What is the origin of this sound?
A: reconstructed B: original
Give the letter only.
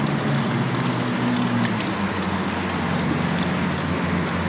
B